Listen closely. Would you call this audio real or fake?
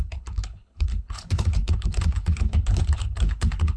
fake